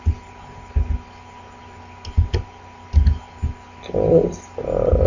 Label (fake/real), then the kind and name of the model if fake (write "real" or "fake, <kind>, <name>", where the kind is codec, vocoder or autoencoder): real